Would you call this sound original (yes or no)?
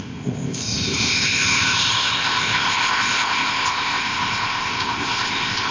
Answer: no